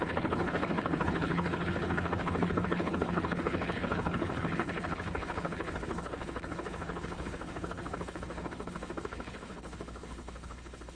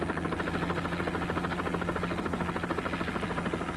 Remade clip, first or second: first